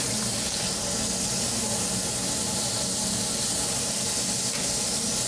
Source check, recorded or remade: recorded